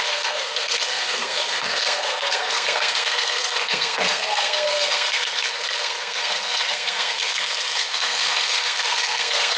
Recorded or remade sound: remade